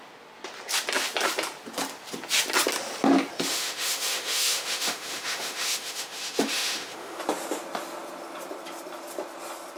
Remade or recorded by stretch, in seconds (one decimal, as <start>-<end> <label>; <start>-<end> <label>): 0.0-3.5 recorded; 3.5-7.2 remade; 7.2-9.8 recorded